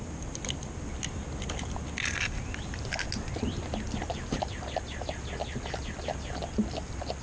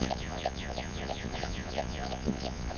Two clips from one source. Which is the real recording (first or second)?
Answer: first